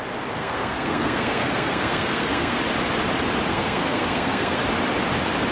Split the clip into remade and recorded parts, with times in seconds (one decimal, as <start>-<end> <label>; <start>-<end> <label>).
0.0-0.4 recorded; 0.4-2.6 remade; 2.6-3.5 recorded; 3.5-4.6 remade; 4.6-5.5 recorded